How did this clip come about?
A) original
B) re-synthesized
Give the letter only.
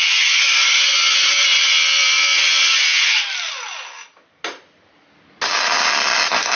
A